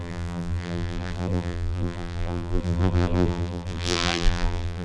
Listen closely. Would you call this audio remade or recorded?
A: remade